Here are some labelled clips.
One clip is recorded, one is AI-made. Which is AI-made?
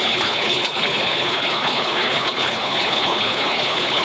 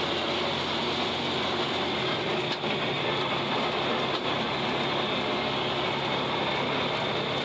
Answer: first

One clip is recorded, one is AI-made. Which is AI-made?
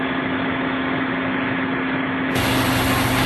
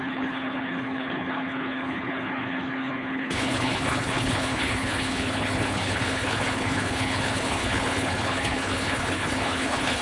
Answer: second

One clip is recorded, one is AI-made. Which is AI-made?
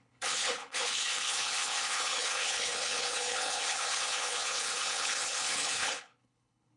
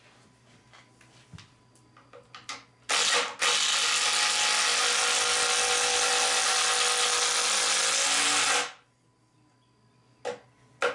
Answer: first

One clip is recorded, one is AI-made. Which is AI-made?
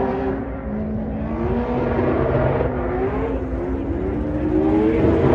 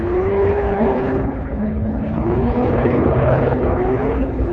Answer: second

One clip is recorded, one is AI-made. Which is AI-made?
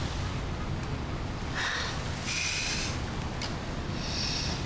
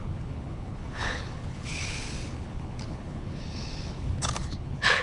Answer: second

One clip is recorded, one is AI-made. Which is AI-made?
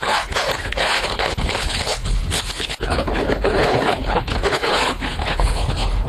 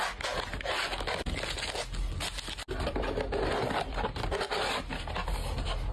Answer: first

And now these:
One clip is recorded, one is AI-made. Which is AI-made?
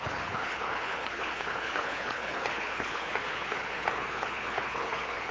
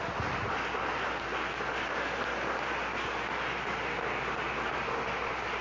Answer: first